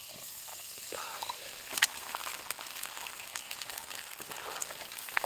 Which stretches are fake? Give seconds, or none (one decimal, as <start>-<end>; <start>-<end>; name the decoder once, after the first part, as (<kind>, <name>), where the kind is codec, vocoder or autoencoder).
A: 0.0-5.3 (codec, SNAC)